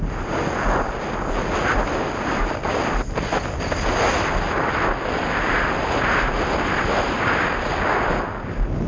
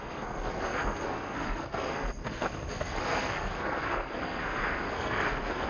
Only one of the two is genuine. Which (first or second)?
first